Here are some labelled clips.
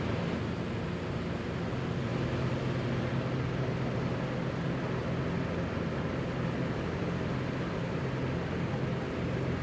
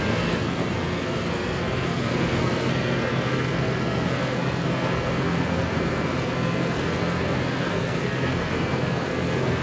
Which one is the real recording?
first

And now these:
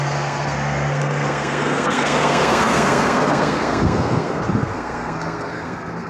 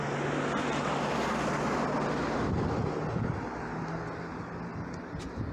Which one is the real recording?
second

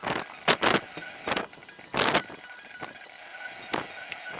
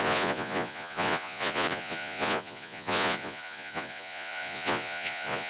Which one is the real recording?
first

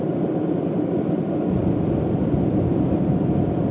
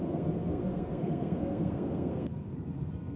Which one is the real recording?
first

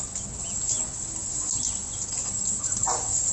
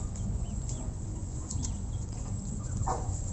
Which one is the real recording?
first